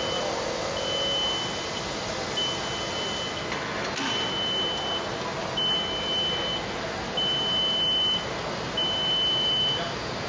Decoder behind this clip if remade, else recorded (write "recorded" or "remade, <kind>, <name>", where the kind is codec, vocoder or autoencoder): recorded